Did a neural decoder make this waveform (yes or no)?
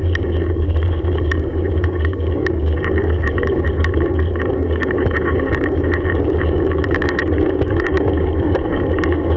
yes